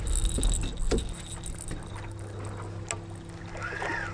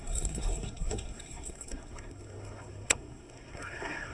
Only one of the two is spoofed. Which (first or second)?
second